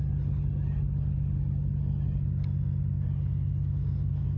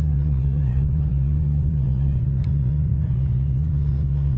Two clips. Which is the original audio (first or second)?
first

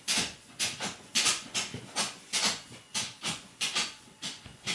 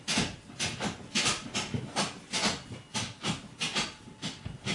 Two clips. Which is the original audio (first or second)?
second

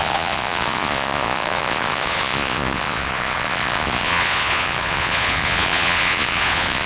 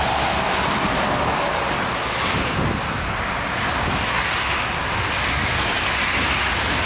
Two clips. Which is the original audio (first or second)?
second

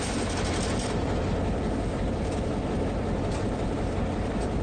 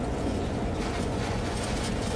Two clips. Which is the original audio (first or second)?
first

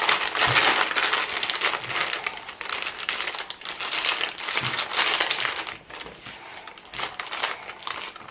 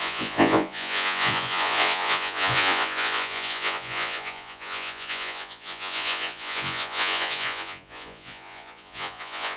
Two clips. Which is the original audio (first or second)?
first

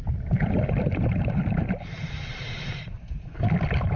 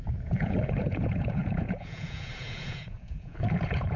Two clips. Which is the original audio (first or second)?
first